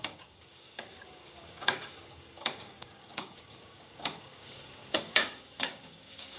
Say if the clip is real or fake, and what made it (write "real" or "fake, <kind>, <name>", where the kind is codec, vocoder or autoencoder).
fake, codec, DAC